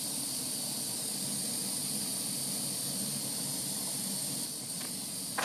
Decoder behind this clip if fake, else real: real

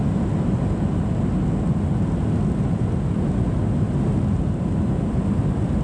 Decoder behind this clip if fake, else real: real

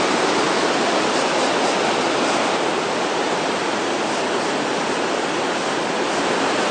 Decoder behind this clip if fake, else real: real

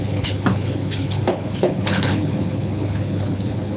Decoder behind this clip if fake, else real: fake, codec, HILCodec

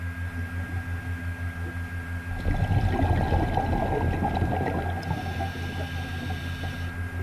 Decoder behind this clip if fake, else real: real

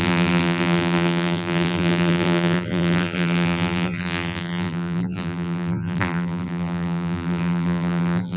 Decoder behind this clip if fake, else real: fake, vocoder, BigVGAN v2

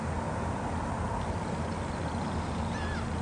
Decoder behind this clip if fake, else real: real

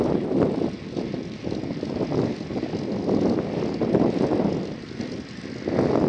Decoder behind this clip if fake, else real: real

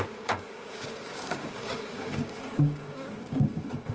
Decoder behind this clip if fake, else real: fake, codec, DAC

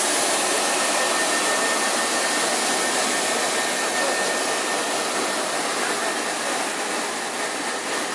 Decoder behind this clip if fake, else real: real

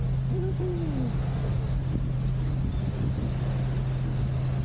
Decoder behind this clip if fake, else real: real